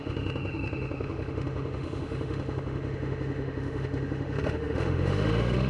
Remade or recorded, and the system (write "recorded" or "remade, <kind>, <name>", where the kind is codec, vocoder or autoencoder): remade, autoencoder, DAC-VAE